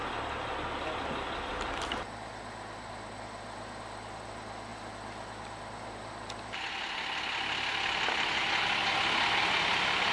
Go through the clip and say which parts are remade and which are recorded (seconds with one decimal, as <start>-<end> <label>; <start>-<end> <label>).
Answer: 0.0-10.1 recorded